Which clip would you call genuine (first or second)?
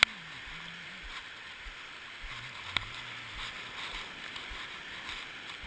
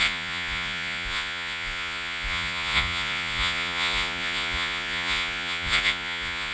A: first